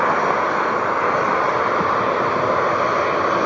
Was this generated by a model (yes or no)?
no